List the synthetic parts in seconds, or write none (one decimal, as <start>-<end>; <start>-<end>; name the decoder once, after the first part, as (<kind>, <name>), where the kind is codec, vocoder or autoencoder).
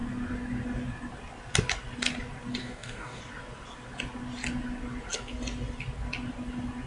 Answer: 2.6-3.2 (codec, DAC)